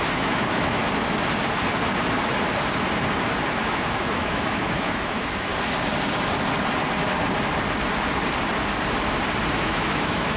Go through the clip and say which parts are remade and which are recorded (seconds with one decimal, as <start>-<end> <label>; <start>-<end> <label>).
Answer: 0.0-0.8 remade; 0.8-3.6 recorded; 3.6-5.5 remade; 5.5-9.5 recorded; 9.5-10.4 remade